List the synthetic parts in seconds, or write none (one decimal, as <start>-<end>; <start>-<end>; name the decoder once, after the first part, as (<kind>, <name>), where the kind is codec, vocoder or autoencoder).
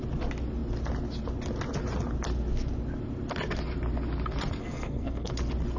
4.6-5.3 (codec, SNAC)